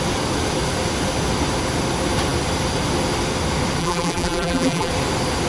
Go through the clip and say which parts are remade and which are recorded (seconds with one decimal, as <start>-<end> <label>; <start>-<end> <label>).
0.0-3.8 recorded; 3.8-4.9 remade; 4.9-5.5 recorded